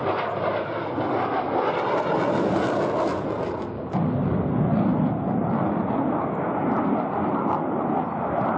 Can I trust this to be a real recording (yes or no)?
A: yes